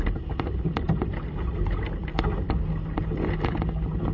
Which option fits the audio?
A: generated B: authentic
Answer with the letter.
B